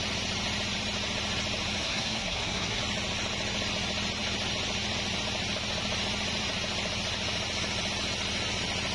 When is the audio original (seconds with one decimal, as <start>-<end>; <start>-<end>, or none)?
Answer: 0.0-1.8; 2.8-8.9